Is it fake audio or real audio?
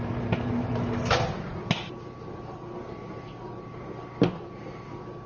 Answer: real